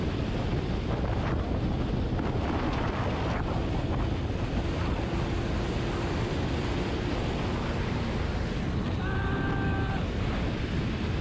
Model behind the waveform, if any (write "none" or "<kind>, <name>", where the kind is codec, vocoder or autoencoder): none